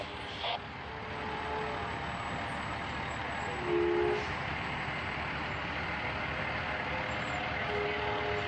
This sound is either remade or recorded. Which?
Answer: recorded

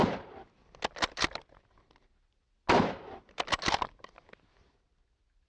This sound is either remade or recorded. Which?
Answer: recorded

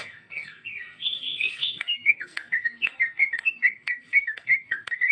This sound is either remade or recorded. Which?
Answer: remade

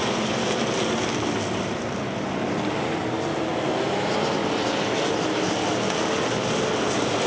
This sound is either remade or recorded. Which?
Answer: recorded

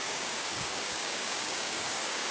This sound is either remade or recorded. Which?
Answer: remade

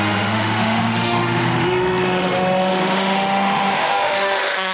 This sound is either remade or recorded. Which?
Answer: remade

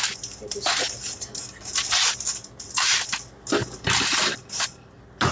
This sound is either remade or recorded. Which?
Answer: recorded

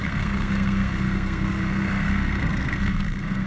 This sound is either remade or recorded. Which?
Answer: remade